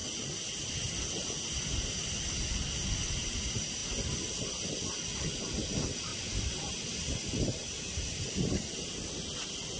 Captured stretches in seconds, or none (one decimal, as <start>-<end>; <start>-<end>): 0.0-9.8